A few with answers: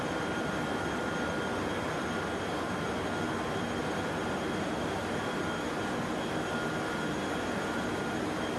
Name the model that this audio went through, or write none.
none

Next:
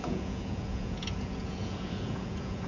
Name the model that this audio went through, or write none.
vocoder, Vocos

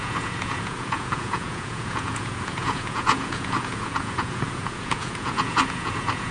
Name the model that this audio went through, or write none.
vocoder, Vocos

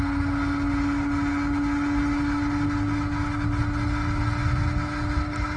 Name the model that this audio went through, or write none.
none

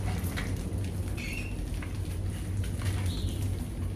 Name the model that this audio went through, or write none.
none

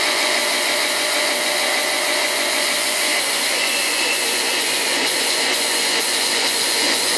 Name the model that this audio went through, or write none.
vocoder, Vocos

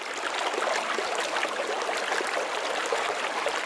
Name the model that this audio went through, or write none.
none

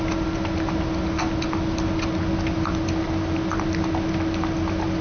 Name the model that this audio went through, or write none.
none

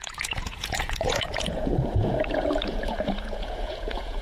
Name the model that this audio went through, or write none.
vocoder, Vocos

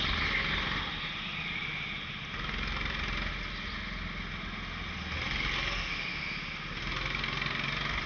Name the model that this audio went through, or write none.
none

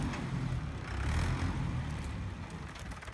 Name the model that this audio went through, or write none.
none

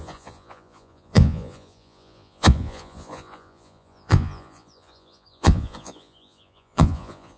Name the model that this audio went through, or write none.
vocoder, Vocos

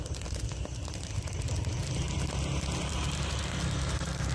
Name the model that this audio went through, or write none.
none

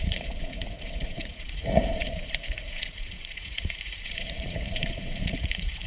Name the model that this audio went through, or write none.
vocoder, Vocos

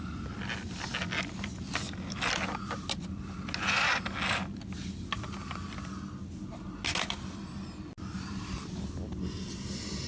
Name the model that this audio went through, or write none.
none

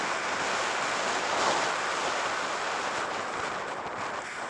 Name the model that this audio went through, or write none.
none